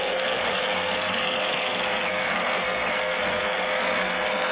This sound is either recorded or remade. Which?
remade